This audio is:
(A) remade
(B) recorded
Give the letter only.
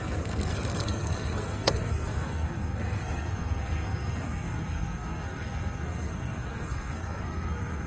A